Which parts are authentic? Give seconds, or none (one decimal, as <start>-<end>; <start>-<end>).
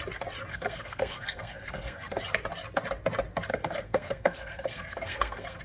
0.0-0.5; 2.2-3.5